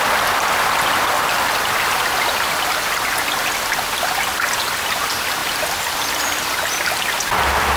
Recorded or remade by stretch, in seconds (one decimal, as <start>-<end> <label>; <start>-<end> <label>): 0.0-7.8 recorded